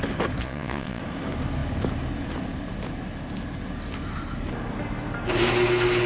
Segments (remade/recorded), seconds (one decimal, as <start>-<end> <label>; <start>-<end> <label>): 0.0-0.4 recorded; 0.4-1.0 remade; 1.0-6.1 recorded